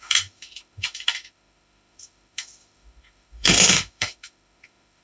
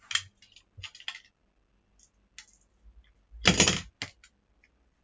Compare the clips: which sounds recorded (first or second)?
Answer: second